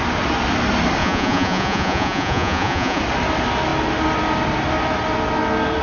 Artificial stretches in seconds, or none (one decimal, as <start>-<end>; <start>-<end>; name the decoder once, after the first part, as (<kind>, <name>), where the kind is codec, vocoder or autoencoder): 1.0-3.0 (vocoder, Vocos)